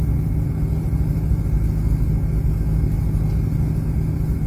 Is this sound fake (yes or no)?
no